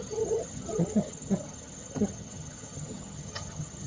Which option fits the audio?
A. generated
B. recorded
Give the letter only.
A